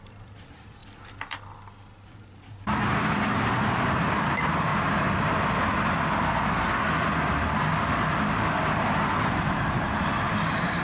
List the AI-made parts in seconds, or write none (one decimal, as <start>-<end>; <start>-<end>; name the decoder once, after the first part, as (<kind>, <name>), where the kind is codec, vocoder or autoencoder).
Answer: 0.0-0.8 (vocoder, BigVGAN v2); 2.0-4.7; 9.3-10.8